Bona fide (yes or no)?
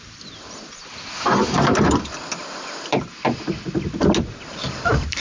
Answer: yes